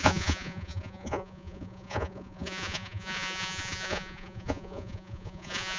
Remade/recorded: remade